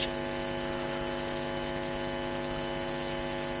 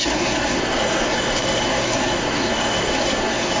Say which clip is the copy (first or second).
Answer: second